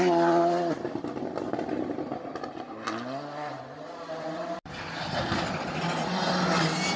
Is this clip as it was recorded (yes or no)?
yes